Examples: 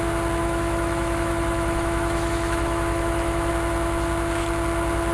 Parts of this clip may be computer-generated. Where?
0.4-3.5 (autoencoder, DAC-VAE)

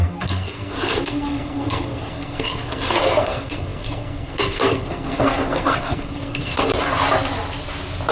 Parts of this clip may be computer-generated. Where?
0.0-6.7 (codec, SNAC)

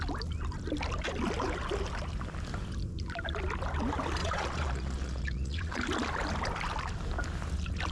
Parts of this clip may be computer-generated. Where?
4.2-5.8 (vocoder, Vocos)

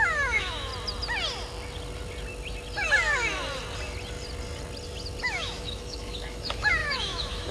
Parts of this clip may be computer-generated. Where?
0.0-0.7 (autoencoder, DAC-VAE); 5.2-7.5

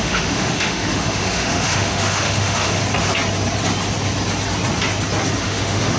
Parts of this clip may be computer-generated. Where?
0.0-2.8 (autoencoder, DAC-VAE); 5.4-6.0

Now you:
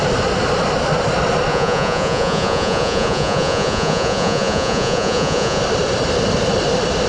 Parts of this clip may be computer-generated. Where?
1.5-5.6 (vocoder, Vocos)

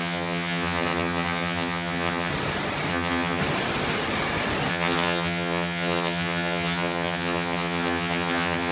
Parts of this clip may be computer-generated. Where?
0.0-2.3 (vocoder, HiFi-GAN); 2.9-3.4; 4.7-8.7

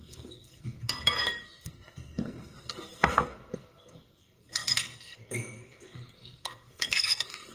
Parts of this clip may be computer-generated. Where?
0.0-7.5 (codec, SNAC)